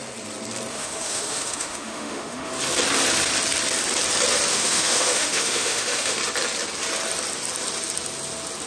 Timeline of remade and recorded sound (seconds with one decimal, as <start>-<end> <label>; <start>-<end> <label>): 0.0-0.7 recorded; 0.7-2.5 remade; 2.5-4.5 recorded; 4.5-6.2 remade; 6.2-8.7 recorded